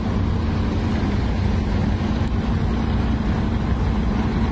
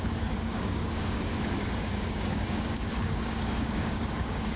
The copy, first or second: second